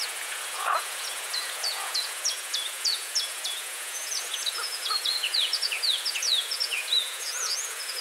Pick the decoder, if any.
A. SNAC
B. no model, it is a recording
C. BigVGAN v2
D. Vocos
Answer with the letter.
D